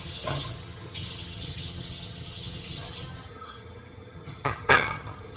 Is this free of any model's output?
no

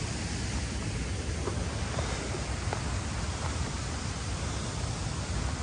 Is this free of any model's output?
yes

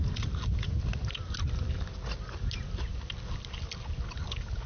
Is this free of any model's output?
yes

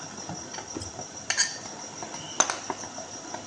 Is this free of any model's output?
yes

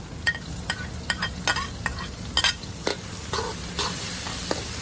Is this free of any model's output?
yes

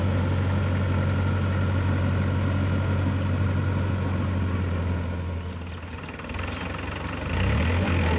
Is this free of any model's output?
yes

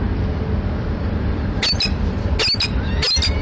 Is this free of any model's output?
yes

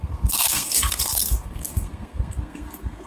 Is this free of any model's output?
no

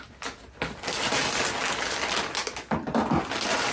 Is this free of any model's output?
yes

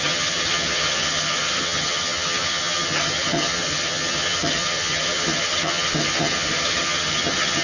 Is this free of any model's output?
no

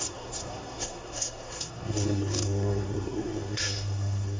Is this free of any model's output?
no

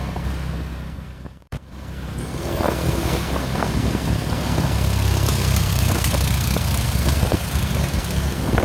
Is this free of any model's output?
no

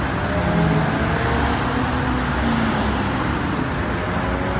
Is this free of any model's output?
yes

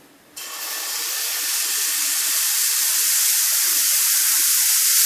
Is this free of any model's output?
yes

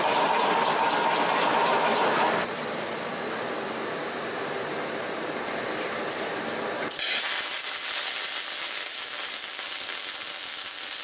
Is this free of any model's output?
yes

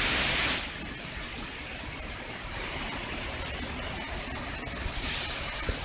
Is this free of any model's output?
yes